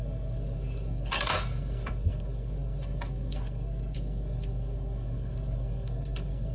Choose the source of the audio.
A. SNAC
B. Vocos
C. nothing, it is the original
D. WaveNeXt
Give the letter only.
A